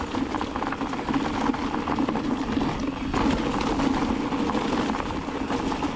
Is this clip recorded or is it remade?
recorded